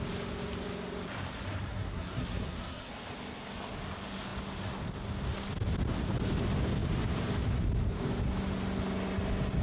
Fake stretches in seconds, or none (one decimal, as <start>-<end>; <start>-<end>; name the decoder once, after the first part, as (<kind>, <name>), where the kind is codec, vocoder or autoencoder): 1.7-2.9 (codec, SNAC)